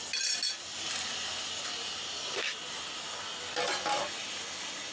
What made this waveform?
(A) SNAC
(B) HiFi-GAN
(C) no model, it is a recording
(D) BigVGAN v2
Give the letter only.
C